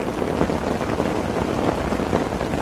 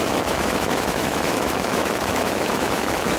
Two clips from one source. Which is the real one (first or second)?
first